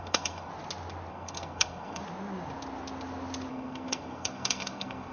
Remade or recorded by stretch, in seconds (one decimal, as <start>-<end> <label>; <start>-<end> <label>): 0.0-0.5 remade; 0.5-1.1 recorded; 1.1-2.0 remade; 2.0-3.5 recorded; 3.5-5.1 remade

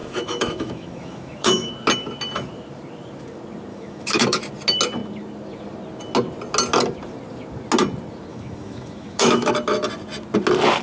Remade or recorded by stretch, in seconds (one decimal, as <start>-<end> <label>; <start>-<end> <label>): 0.0-1.7 remade; 1.7-3.7 recorded; 3.7-4.4 remade; 4.4-8.3 recorded; 8.3-9.5 remade; 9.5-10.8 recorded

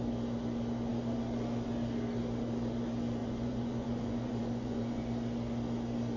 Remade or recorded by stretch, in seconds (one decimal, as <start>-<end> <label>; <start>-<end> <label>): 0.0-3.2 recorded; 3.2-5.0 remade; 5.0-6.2 recorded